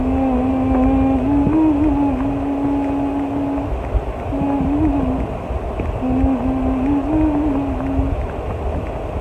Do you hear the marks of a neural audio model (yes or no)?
no